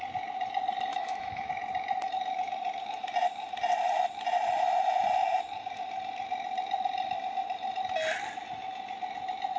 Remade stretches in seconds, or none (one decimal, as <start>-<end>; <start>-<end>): 0.9-1.5